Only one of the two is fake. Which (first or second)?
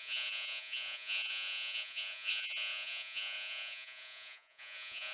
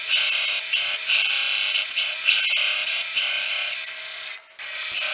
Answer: first